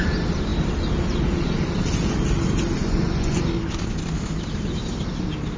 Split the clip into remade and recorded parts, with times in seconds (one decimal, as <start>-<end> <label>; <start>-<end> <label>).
0.0-2.8 recorded; 2.8-3.4 remade; 3.4-5.6 recorded